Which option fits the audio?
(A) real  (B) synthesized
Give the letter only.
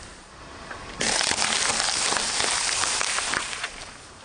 B